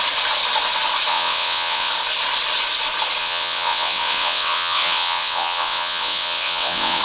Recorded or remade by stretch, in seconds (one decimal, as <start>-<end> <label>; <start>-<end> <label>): 0.0-1.1 recorded; 1.1-1.9 remade; 1.9-3.2 recorded; 3.2-7.0 remade